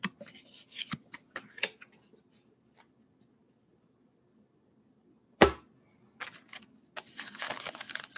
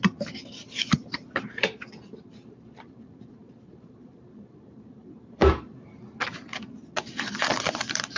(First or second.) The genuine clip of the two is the first